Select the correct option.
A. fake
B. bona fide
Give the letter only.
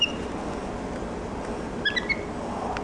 B